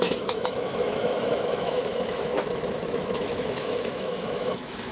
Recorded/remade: remade